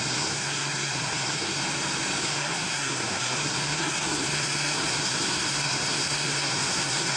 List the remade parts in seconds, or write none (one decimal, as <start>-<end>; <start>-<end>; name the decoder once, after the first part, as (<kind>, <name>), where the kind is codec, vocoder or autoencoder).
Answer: 0.0-1.6 (codec, SNAC); 2.2-7.2